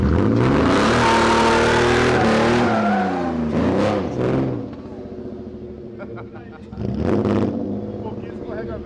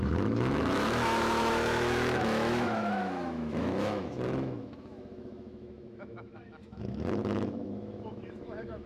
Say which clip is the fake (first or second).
second